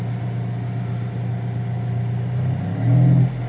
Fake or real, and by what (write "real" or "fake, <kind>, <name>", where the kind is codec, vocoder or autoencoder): real